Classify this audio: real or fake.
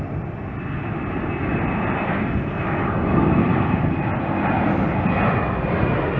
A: real